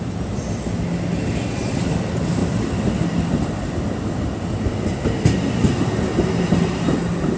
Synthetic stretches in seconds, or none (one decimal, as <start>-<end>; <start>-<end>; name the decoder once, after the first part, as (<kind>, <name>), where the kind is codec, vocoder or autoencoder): none